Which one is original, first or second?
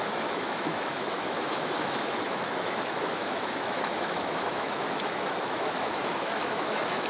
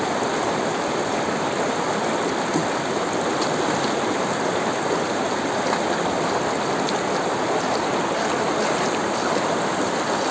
second